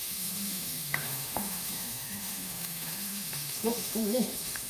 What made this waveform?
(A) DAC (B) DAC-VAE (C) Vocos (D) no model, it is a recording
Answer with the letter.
B